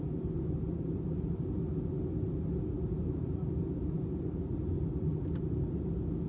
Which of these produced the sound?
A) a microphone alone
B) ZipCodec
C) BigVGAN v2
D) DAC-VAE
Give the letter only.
A